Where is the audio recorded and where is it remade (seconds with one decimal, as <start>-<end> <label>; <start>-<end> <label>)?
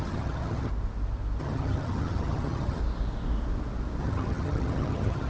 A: 0.0-0.7 remade; 0.7-1.4 recorded; 1.4-2.8 remade; 2.8-4.0 recorded; 4.0-5.3 remade